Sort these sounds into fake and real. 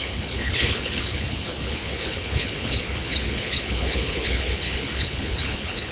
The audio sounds fake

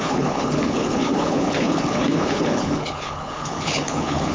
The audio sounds fake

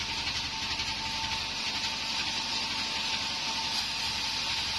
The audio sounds real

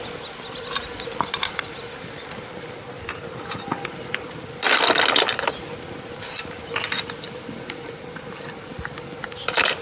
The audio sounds real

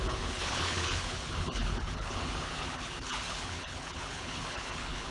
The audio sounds fake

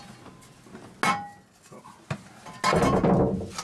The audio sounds real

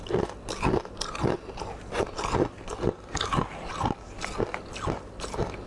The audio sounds real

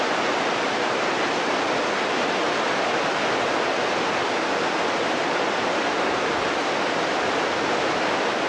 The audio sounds real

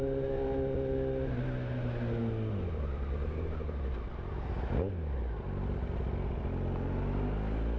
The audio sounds real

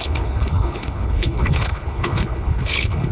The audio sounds fake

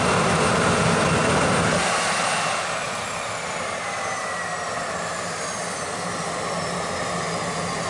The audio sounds real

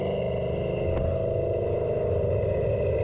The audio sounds real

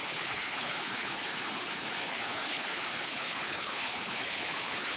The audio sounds fake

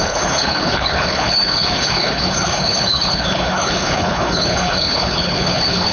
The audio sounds fake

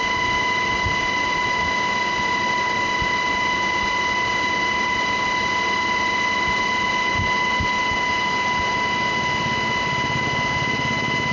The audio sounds real